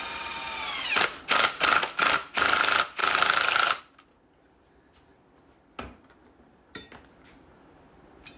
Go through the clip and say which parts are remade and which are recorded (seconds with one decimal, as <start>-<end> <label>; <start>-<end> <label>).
0.0-8.4 recorded